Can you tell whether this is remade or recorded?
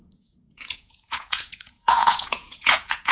remade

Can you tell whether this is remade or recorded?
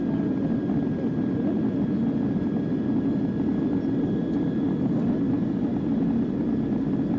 recorded